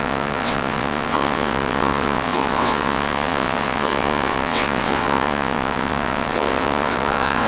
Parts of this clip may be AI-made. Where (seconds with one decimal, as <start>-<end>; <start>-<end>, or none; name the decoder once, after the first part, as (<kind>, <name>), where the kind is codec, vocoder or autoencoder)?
0.0-7.5 (vocoder, WaveNeXt)